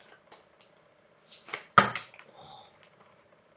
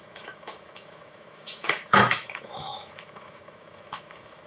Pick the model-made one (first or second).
second